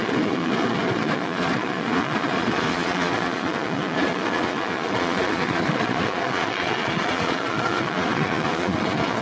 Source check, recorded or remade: remade